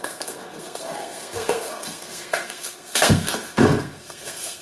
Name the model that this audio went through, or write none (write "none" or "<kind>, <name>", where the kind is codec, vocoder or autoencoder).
codec, SNAC